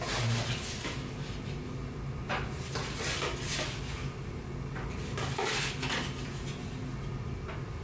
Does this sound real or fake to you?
real